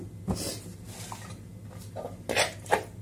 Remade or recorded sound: recorded